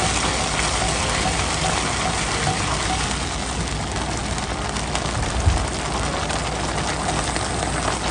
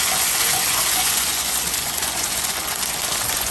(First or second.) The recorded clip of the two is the first